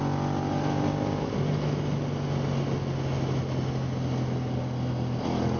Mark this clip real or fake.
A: real